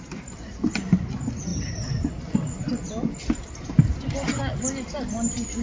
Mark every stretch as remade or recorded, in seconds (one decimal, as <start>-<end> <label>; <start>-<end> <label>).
0.0-5.6 recorded